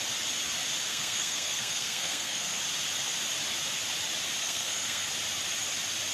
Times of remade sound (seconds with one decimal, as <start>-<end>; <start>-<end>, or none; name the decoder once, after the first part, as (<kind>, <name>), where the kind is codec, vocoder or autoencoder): 0.9-2.6 (codec, SNAC); 4.4-5.1